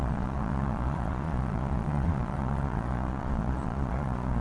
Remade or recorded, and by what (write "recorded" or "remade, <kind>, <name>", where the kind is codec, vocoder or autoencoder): remade, vocoder, Vocos